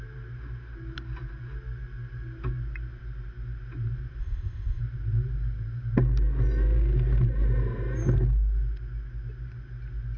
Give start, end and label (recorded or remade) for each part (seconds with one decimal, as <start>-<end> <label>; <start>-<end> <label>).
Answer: 0.0-4.2 recorded; 4.2-4.8 remade; 4.8-10.2 recorded